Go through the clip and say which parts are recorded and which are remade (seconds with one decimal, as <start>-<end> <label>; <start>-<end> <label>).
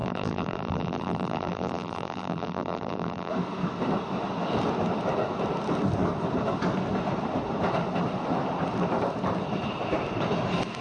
0.0-3.3 remade; 3.3-10.8 recorded